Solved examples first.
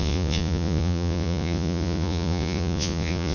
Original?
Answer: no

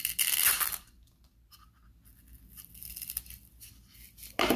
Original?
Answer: yes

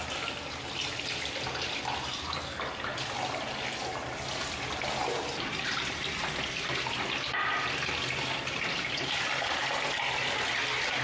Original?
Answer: yes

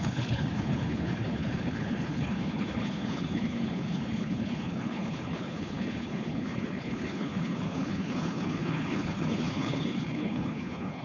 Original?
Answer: no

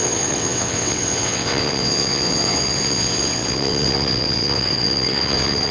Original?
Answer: no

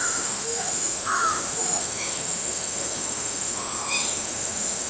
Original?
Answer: no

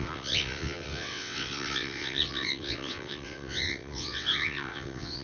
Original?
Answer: no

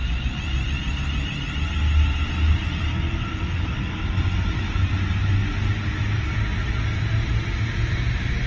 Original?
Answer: yes